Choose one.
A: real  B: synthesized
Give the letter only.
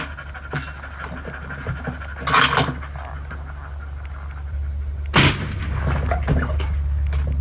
A